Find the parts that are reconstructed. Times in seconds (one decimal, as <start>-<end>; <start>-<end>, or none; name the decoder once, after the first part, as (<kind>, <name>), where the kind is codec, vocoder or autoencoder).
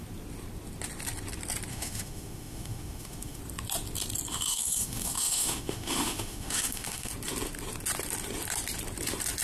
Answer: 1.7-3.4 (autoencoder, DAC-VAE); 4.3-7.1